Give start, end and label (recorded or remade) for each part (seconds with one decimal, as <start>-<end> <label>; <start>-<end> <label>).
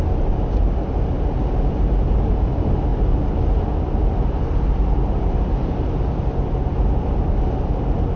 0.0-8.2 recorded